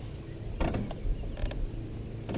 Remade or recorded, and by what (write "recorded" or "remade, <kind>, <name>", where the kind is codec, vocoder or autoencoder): recorded